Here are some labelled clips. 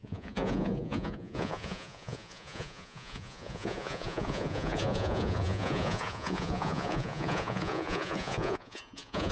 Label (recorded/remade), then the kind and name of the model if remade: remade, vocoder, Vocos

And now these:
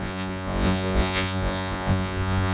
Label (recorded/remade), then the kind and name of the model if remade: remade, vocoder, Vocos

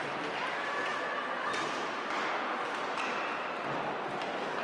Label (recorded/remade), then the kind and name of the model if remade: recorded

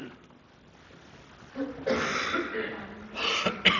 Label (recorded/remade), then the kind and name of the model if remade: recorded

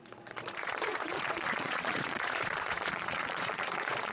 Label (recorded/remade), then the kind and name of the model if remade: remade, vocoder, Vocos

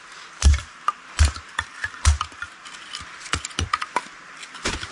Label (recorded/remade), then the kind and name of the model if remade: recorded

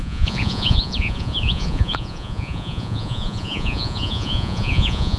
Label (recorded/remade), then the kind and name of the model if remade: remade, vocoder, Vocos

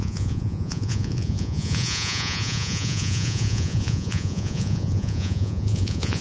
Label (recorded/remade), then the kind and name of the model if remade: remade, vocoder, Vocos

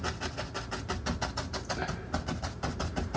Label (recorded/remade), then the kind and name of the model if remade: recorded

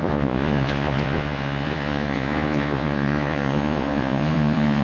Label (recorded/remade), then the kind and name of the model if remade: remade, vocoder, Vocos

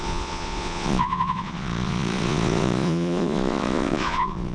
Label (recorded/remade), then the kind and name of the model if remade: remade, vocoder, Vocos